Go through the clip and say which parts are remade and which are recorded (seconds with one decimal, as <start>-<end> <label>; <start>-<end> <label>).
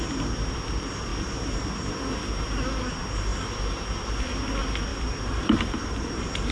0.0-4.9 recorded; 4.9-6.5 remade